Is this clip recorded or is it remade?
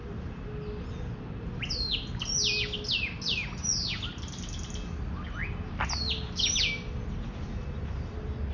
recorded